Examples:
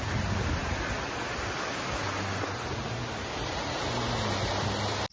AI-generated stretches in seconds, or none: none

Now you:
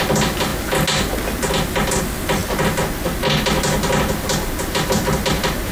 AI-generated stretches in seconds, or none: none